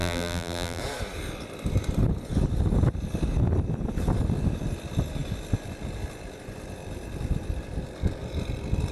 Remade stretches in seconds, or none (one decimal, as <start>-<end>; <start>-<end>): 0.0-0.8